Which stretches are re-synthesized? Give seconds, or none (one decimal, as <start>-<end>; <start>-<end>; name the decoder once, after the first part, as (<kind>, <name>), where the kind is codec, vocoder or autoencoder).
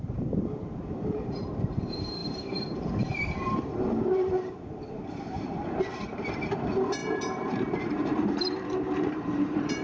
0.0-9.8 (vocoder, BigVGAN v2)